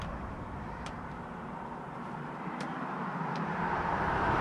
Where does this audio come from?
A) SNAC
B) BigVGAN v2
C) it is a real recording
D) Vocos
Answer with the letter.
B